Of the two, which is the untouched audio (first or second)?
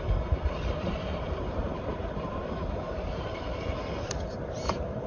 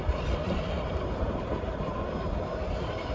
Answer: second